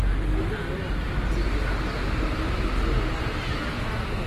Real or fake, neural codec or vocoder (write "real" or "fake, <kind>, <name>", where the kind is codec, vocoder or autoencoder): real